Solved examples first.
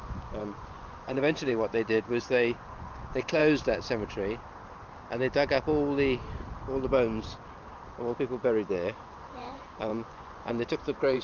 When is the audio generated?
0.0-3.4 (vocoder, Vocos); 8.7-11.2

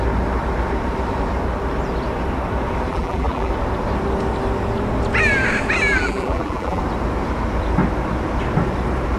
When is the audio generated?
2.9-3.5 (vocoder, BigVGAN v2); 5.9-6.8

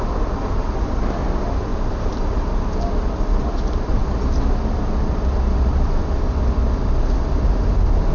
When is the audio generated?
none